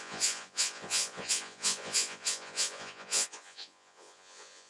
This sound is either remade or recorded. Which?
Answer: remade